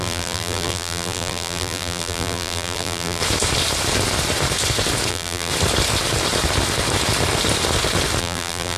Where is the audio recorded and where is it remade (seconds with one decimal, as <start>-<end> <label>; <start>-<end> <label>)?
0.0-3.2 remade; 3.2-5.1 recorded; 5.1-5.5 remade; 5.5-8.2 recorded; 8.2-8.8 remade